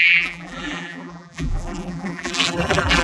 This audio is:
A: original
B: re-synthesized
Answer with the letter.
B